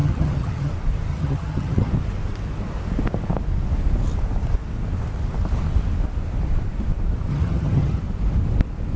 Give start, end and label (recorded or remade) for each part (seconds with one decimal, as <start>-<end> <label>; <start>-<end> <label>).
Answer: 0.0-0.7 remade; 0.7-1.1 recorded; 1.1-1.9 remade; 1.9-7.3 recorded; 7.3-8.0 remade; 8.0-9.0 recorded